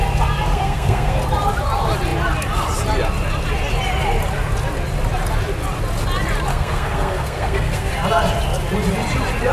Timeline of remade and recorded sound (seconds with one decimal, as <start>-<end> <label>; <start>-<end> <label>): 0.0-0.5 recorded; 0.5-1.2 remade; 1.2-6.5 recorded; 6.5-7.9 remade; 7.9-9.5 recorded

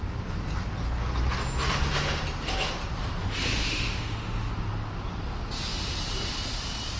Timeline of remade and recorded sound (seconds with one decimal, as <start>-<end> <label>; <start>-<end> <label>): 0.0-3.5 recorded; 3.5-4.5 remade; 4.5-7.0 recorded

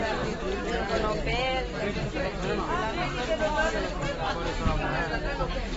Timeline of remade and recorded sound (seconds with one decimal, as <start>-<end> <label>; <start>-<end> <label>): 0.0-5.8 recorded

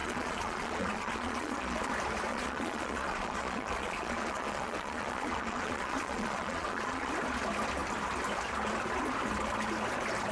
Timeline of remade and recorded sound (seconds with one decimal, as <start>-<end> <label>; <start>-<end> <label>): 0.0-1.9 remade; 1.9-2.3 recorded; 2.3-7.1 remade; 7.1-10.3 recorded

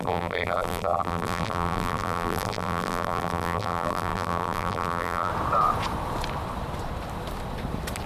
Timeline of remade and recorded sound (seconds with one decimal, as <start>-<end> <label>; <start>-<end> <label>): 0.0-5.3 remade; 5.3-8.1 recorded

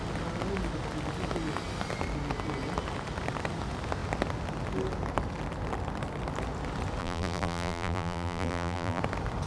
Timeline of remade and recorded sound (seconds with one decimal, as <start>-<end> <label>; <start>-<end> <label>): 0.0-7.0 recorded; 7.0-9.0 remade; 9.0-9.5 recorded

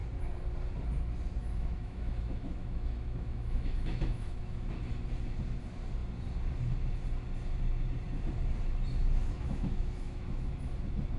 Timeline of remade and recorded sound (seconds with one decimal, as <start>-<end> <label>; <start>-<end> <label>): 0.0-1.4 recorded; 1.4-4.7 remade; 4.7-9.2 recorded; 9.2-10.5 remade; 10.5-11.2 recorded

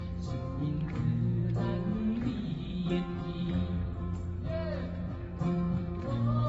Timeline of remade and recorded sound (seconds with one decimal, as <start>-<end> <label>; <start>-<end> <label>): 0.0-1.9 recorded; 1.9-2.9 remade; 2.9-3.3 recorded; 3.3-4.4 remade; 4.4-5.0 recorded; 5.0-6.0 remade; 6.0-6.5 recorded